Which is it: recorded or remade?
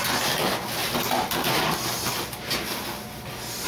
recorded